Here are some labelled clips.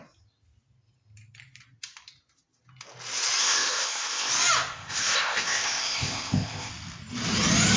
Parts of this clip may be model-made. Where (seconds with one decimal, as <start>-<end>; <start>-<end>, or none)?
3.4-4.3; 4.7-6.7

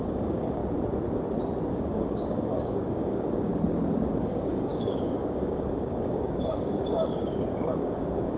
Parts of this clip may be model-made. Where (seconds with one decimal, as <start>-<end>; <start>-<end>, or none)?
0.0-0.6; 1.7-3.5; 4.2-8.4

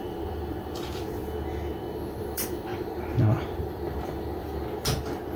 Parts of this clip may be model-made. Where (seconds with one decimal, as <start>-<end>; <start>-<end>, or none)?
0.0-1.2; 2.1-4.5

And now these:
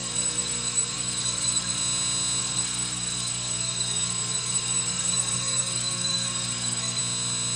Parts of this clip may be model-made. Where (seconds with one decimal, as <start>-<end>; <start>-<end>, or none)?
0.0-1.8; 2.4-7.0

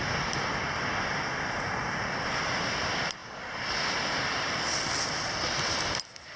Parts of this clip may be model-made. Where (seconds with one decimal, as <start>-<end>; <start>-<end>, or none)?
none

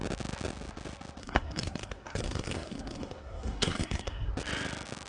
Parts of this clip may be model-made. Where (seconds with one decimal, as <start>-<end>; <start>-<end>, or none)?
1.2-4.3

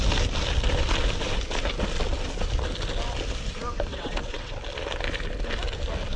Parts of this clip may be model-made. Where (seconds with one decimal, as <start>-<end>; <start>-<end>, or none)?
3.9-4.6